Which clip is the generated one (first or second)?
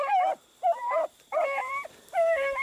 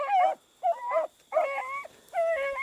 first